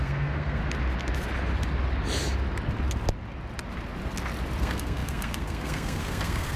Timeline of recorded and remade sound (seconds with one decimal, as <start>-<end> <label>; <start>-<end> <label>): 0.0-0.6 remade; 0.6-4.6 recorded; 4.6-6.6 remade